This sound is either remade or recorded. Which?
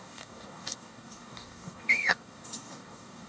remade